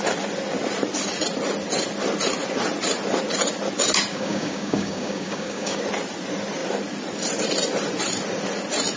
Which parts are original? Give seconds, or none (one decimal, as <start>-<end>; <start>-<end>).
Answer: 0.0-4.1; 5.8-9.0